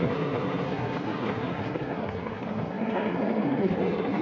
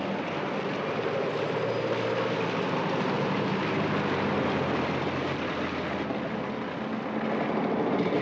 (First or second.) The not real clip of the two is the first